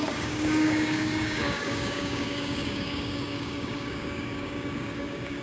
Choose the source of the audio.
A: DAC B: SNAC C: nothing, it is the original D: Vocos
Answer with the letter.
A